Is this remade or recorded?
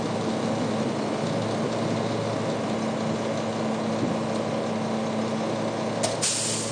recorded